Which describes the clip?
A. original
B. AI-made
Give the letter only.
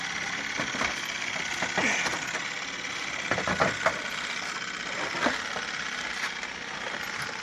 A